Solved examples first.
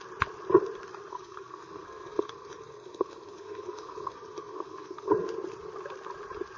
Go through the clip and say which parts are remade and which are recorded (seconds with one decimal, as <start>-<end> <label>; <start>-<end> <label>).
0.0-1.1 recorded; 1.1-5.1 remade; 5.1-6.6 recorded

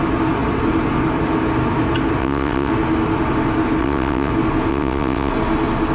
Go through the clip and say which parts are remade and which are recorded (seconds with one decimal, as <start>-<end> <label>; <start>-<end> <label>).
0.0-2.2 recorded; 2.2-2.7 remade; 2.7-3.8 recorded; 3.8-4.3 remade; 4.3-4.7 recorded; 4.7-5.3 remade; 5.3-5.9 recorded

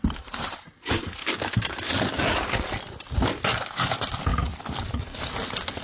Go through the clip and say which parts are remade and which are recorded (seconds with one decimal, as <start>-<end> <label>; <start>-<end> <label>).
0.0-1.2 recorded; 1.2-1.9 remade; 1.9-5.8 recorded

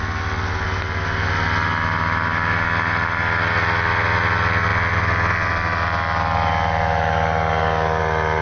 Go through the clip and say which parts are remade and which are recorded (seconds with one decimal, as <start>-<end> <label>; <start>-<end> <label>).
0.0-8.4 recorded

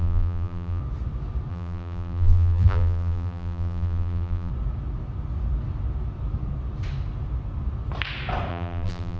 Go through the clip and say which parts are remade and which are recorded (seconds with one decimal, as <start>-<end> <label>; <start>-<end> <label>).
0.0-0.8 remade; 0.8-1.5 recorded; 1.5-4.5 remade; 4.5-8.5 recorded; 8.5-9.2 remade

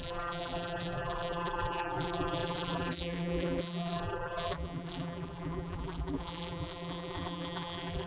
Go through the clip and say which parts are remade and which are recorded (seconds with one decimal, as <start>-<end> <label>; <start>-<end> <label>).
0.0-8.1 remade